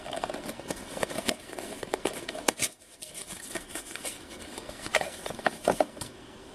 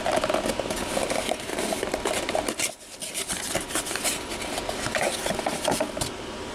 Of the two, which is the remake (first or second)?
first